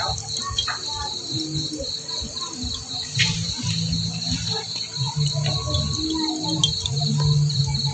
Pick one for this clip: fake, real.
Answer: real